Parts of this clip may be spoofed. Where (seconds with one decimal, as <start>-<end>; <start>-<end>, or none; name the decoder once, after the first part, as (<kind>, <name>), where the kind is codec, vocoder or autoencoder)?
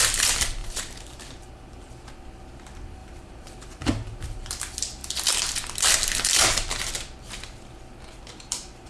0.6-2.1 (vocoder, BigVGAN v2); 3.0-4.5